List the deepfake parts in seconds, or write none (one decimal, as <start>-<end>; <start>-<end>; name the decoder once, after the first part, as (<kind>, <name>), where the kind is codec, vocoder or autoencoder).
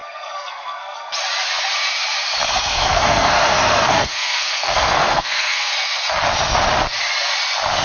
0.0-1.1 (codec, SNAC); 2.5-5.7